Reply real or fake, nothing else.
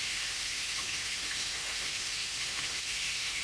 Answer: fake